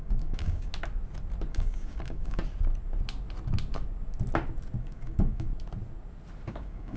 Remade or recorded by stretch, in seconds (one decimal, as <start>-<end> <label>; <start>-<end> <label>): 0.0-0.7 remade; 0.7-1.5 recorded; 1.5-2.4 remade; 2.4-4.8 recorded; 4.8-5.5 remade; 5.5-6.5 recorded; 6.5-7.0 remade